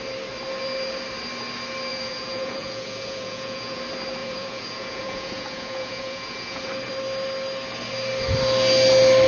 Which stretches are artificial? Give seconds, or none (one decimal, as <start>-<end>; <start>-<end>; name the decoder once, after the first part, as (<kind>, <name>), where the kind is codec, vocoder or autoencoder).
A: 1.9-3.8 (vocoder, Vocos); 4.2-6.7